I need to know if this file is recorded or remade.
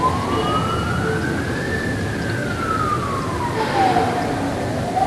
recorded